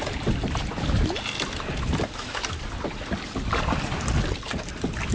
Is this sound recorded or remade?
recorded